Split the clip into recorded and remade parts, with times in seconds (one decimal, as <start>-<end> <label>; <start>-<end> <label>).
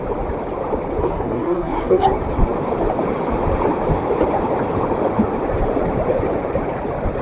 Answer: 0.0-1.0 recorded; 1.0-2.0 remade; 2.0-7.2 recorded